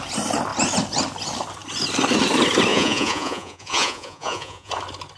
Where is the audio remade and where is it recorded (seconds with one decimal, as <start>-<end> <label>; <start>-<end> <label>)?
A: 0.0-2.7 recorded; 2.7-4.7 remade; 4.7-5.2 recorded